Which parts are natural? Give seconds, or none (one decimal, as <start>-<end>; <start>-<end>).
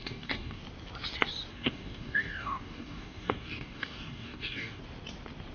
0.6-1.5; 4.8-5.5